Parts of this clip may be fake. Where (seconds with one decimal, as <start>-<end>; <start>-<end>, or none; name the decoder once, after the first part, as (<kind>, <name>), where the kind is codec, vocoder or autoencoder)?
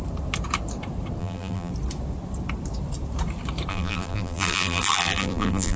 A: 1.2-1.7 (vocoder, BigVGAN v2); 3.7-5.8